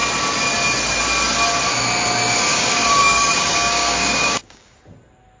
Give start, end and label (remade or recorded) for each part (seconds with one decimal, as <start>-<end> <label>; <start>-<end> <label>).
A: 0.0-2.5 recorded; 2.5-4.8 remade; 4.8-5.4 recorded

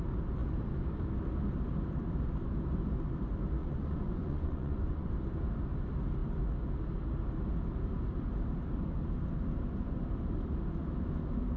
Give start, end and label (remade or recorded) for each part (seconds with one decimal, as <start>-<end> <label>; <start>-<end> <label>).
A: 0.0-3.6 recorded; 3.6-5.1 remade; 5.1-11.6 recorded

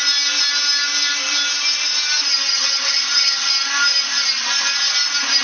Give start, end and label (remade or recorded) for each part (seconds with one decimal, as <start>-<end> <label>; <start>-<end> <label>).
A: 0.0-2.5 recorded; 2.5-3.5 remade; 3.5-5.4 recorded

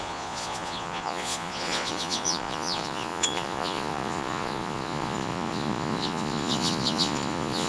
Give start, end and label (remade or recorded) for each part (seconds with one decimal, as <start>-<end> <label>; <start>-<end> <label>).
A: 0.0-7.7 remade

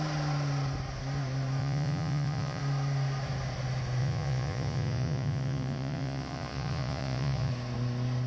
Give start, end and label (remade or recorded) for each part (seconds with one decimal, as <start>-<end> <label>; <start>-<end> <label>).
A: 0.0-1.6 recorded; 1.6-2.6 remade; 2.6-4.0 recorded; 4.0-7.5 remade; 7.5-8.3 recorded

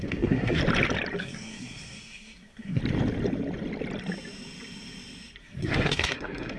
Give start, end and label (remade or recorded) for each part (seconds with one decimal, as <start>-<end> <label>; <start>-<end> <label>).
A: 0.0-0.6 remade; 0.6-1.2 recorded; 1.2-2.8 remade; 2.8-5.4 recorded; 5.4-6.6 remade

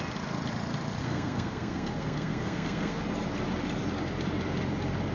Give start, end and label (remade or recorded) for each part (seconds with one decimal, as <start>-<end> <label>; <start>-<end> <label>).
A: 0.0-1.0 recorded; 1.0-3.0 remade; 3.0-5.1 recorded

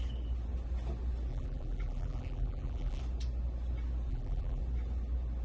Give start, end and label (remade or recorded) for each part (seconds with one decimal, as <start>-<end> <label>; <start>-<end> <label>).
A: 0.0-1.3 recorded; 1.3-3.0 remade; 3.0-4.1 recorded; 4.1-4.6 remade; 4.6-5.4 recorded